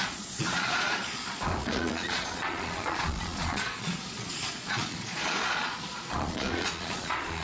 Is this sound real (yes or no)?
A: no